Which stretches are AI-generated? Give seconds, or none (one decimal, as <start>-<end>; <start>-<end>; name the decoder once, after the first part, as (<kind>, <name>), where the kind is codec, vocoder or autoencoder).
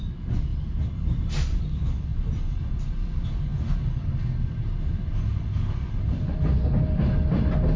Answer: none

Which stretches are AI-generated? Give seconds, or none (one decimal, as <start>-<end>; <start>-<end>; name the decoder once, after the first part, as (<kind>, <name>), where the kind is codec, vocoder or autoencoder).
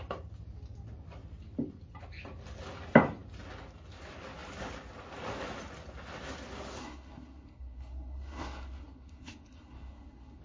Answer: 6.8-10.4 (codec, SNAC)